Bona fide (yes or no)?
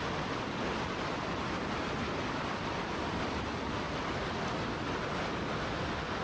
yes